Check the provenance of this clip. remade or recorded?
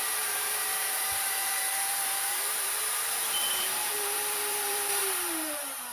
remade